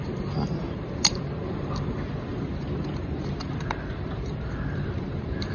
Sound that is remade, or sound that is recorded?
remade